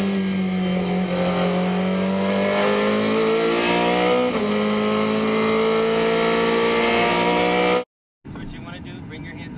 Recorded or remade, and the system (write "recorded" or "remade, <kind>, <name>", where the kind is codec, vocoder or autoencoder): recorded